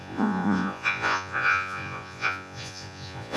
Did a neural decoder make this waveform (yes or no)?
yes